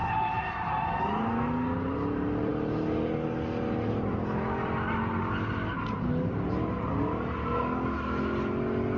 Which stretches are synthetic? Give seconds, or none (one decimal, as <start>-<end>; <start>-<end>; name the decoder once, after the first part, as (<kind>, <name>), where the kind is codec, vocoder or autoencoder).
7.4-8.2 (codec, DAC)